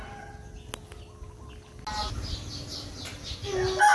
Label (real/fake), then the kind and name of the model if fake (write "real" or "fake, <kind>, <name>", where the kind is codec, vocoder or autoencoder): real